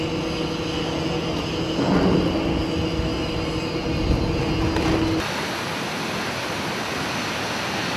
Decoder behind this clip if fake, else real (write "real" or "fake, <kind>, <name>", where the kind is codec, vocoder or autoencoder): real